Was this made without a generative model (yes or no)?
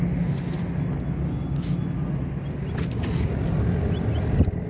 yes